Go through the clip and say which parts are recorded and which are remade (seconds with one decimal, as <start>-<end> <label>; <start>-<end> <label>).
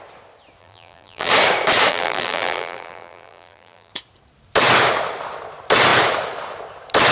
0.0-0.6 recorded; 0.6-1.3 remade; 1.3-1.9 recorded; 1.9-3.9 remade; 3.9-7.1 recorded